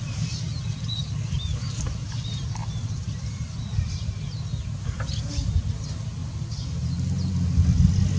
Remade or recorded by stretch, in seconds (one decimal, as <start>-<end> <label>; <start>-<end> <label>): 0.0-1.0 recorded; 1.0-4.2 remade; 4.2-8.2 recorded